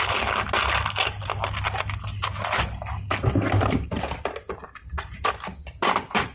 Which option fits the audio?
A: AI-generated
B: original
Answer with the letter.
B